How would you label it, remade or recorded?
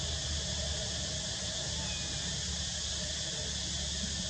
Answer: recorded